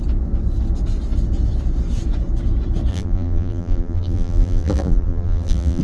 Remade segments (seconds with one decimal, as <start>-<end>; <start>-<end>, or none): 2.9-5.8